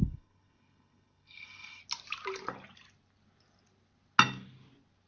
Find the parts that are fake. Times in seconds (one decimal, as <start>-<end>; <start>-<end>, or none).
0.0-1.8